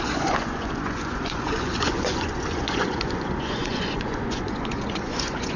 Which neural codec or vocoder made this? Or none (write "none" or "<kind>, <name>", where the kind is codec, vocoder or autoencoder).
vocoder, Vocos